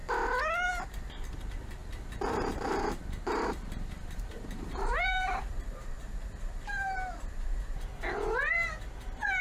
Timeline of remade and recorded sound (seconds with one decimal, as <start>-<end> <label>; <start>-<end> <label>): 0.0-1.3 recorded; 1.3-7.9 remade; 7.9-9.0 recorded; 9.0-9.4 remade